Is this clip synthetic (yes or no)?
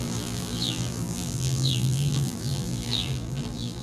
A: yes